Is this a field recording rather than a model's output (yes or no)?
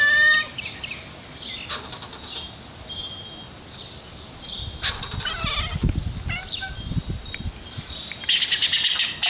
yes